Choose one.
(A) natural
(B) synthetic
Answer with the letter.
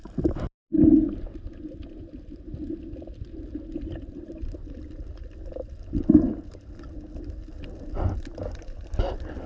A